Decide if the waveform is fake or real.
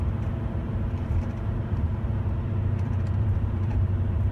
fake